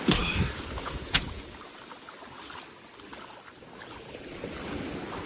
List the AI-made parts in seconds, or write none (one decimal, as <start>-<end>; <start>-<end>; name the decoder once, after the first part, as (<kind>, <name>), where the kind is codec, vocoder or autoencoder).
0.8-1.4 (vocoder, Vocos)